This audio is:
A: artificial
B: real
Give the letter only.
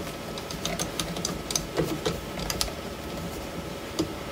A